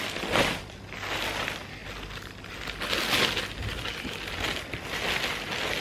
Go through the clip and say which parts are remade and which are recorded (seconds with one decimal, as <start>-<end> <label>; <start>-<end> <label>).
0.0-5.8 recorded